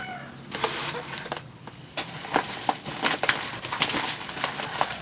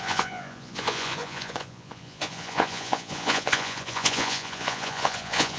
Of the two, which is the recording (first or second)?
first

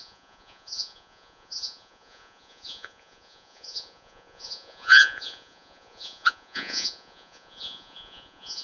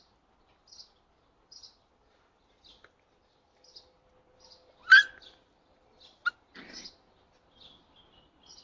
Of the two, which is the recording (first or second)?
second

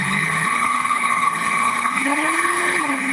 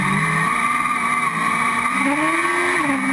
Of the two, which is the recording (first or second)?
second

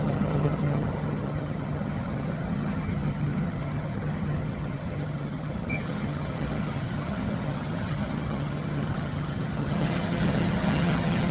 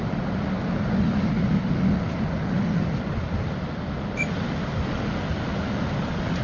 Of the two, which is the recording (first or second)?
second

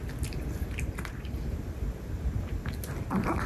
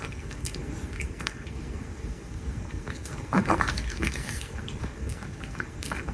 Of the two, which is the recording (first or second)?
first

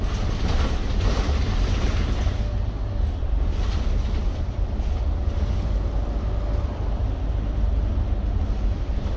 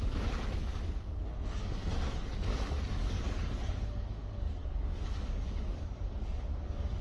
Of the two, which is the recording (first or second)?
first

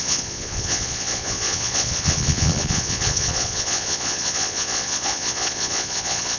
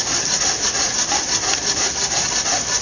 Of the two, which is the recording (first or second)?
second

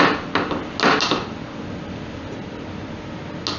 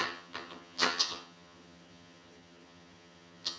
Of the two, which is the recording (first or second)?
first